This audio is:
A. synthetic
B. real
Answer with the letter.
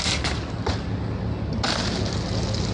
B